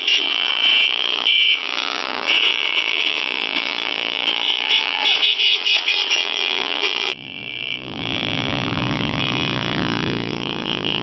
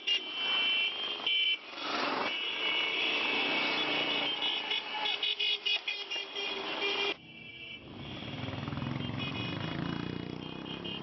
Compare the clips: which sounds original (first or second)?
second